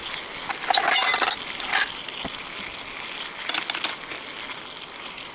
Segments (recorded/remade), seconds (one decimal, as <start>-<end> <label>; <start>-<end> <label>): 0.0-5.3 recorded